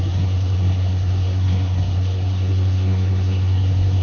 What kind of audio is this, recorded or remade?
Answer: remade